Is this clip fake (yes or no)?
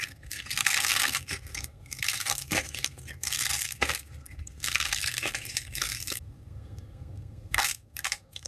yes